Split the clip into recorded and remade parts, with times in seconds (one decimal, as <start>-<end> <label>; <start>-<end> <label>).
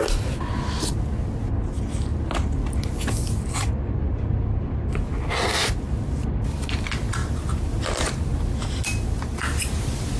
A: 0.0-10.2 recorded